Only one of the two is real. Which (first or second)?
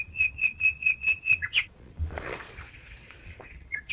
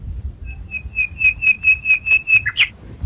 second